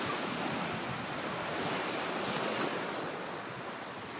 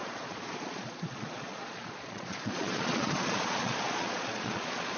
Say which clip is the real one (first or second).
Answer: first